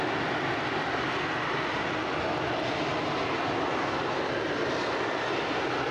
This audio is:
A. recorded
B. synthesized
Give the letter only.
A